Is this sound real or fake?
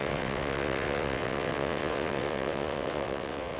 fake